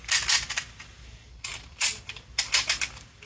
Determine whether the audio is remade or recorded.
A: recorded